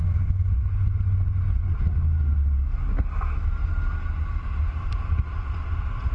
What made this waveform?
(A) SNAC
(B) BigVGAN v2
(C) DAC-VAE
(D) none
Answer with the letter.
D